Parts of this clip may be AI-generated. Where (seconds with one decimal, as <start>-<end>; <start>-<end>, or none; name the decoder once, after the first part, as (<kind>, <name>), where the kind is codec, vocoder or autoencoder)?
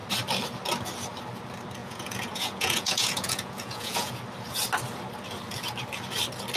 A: 1.8-4.2 (vocoder, Vocos)